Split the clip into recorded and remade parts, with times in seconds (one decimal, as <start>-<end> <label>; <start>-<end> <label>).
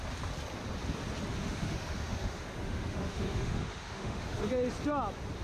0.0-1.3 recorded; 1.3-4.5 remade; 4.5-5.4 recorded